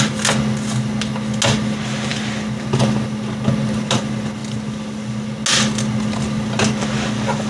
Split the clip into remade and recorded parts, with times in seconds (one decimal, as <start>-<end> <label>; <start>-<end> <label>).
0.0-7.5 recorded